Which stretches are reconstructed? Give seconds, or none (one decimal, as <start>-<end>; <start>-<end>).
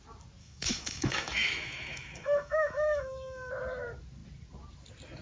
0.4-3.5